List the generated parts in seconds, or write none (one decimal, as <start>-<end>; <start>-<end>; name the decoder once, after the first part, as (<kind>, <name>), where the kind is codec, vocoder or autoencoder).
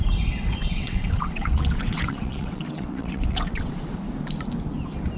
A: 0.6-3.7 (vocoder, WaveNeXt)